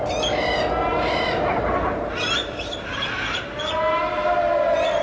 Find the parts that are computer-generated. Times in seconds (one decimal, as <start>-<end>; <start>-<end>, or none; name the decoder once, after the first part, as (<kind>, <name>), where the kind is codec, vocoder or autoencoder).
0.9-3.0 (vocoder, BigVGAN v2)